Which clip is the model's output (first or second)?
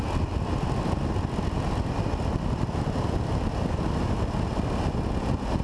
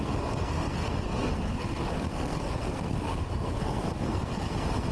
second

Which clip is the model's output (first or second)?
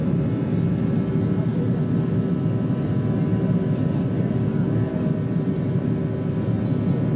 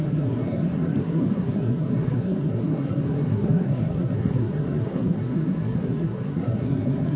second